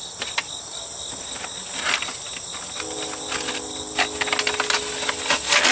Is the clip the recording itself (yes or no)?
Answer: yes